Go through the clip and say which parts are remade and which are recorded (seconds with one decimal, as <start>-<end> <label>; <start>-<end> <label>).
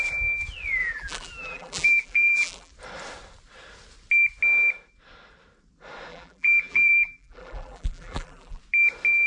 0.0-0.8 recorded; 0.8-2.7 remade; 2.7-6.1 recorded; 6.1-8.6 remade; 8.6-9.3 recorded